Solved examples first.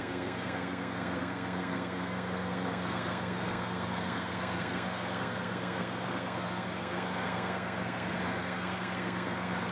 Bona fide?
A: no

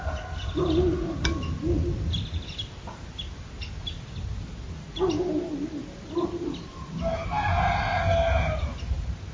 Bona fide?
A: yes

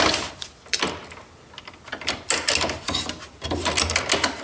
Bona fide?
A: yes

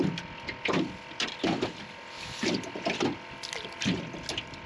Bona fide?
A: yes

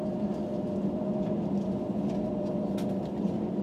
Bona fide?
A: yes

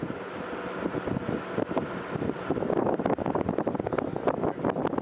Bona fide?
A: yes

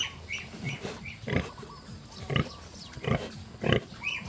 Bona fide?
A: yes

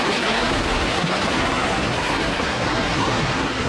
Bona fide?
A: no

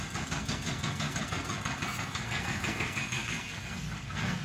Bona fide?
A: no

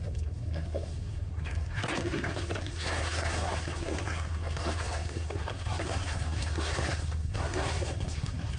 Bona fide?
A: no